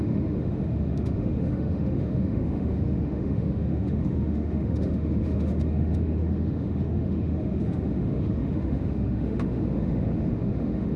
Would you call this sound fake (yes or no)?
yes